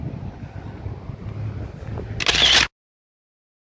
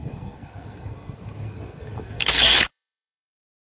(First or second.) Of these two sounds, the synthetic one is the second